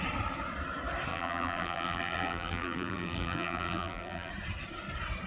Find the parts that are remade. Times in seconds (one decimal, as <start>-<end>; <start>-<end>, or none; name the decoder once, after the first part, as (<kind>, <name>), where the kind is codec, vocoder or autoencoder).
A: 1.1-4.3 (vocoder, BigVGAN v2)